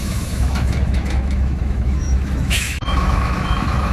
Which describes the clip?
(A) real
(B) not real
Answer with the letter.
B